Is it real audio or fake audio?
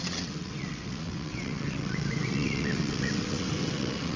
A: fake